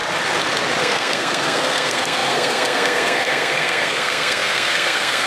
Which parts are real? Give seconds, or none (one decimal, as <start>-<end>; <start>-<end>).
0.0-0.8